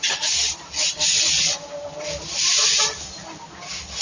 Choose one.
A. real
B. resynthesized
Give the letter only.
A